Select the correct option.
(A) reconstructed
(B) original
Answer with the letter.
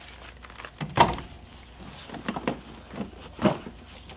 B